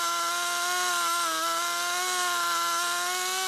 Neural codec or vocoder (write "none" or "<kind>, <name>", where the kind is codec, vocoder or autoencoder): none